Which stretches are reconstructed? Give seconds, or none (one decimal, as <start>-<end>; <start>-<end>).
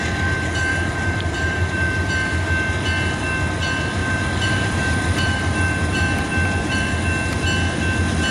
0.7-2.1; 4.0-7.0